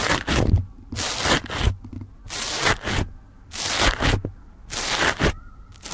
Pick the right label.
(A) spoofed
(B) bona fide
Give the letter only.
B